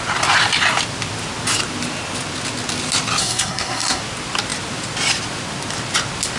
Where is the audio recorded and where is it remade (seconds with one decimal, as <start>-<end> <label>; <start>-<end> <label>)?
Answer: 0.0-3.2 recorded; 3.2-4.0 remade; 4.0-6.4 recorded